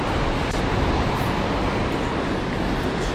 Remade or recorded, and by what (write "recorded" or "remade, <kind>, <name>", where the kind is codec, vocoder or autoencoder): recorded